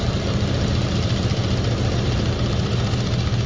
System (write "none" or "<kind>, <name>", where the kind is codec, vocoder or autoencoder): none